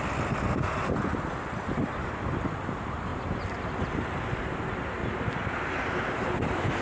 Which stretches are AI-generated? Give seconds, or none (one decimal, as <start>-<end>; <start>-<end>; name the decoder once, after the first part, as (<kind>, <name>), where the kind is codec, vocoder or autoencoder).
1.1-2.3 (vocoder, BigVGAN v2); 5.0-5.9